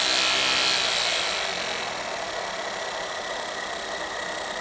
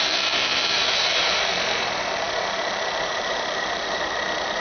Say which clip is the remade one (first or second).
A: second